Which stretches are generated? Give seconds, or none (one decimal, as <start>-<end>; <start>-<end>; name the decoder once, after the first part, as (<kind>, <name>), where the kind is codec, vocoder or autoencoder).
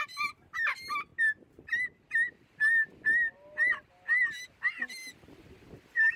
none